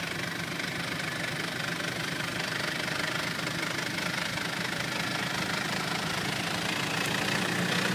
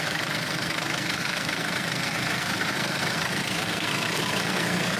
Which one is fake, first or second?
second